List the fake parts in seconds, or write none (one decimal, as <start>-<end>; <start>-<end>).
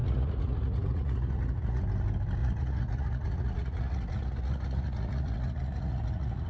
0.0-1.8; 2.4-6.5